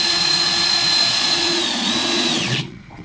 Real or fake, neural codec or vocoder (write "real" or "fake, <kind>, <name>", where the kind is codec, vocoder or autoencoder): fake, vocoder, Vocos